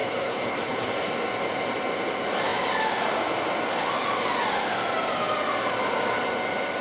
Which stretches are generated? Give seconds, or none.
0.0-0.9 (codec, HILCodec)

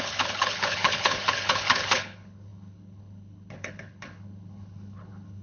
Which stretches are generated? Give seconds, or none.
0.0-5.4 (codec, HILCodec)

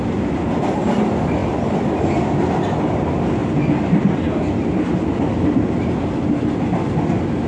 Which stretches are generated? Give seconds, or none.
none

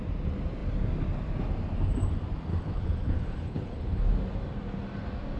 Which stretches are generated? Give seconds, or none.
2.5-4.0 (codec, HILCodec)